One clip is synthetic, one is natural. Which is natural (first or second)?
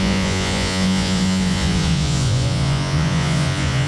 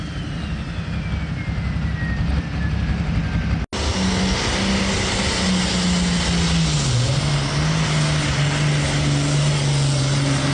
second